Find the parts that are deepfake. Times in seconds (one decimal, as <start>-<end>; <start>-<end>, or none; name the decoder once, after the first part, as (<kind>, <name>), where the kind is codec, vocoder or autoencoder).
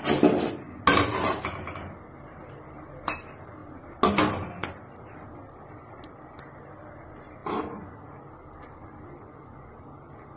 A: 0.9-2.1 (vocoder, BigVGAN v2)